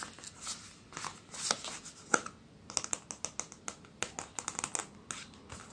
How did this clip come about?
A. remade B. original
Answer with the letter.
B